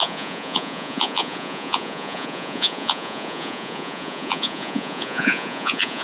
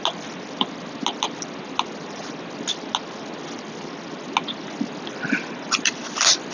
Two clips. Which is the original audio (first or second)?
second